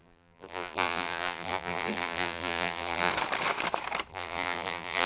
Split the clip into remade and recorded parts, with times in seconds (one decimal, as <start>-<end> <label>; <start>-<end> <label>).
0.0-3.1 remade; 3.1-4.1 recorded; 4.1-5.1 remade

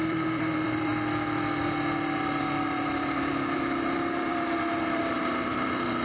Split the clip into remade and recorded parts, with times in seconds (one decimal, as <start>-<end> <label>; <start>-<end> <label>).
0.0-0.9 remade; 0.9-1.6 recorded; 1.6-6.0 remade